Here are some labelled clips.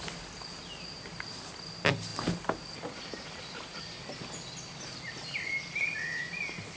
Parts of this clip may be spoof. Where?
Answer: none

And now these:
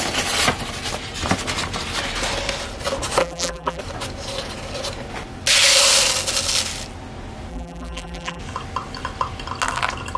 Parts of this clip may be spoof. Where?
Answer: 3.2-3.8; 7.5-8.4

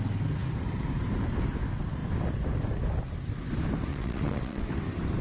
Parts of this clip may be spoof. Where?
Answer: 3.9-4.7

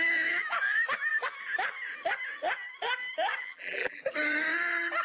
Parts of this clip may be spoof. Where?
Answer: 3.4-4.0

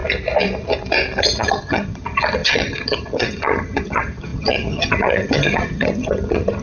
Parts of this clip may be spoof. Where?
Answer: 1.2-6.6

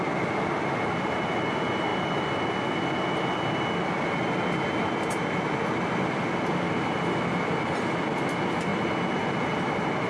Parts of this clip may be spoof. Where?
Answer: none

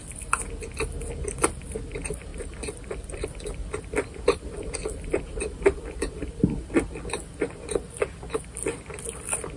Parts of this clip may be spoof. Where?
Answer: 2.3-6.3